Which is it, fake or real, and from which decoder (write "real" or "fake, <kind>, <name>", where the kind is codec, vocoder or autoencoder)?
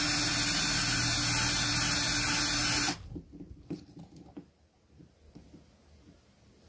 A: real